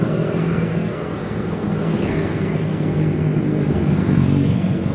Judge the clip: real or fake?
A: fake